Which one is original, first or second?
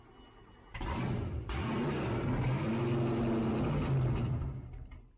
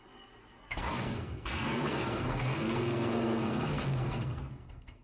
first